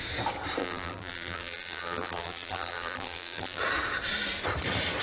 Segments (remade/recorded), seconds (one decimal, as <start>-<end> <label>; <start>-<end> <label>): 0.0-0.6 recorded; 0.6-3.6 remade; 3.6-5.0 recorded